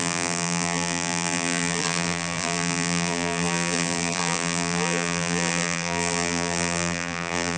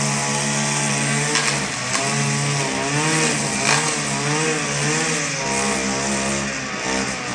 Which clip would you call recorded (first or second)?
second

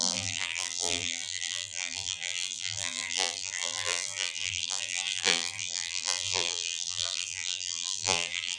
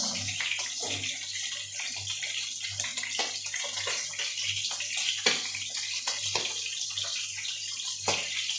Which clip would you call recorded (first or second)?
second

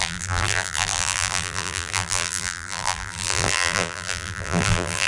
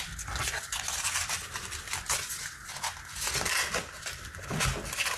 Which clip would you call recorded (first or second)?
second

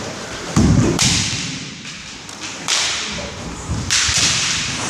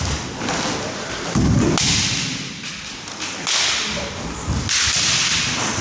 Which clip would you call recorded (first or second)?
second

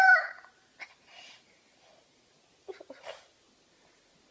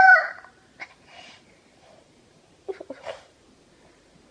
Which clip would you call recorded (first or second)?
first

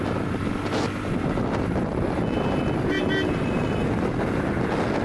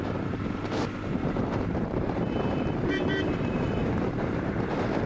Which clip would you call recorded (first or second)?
first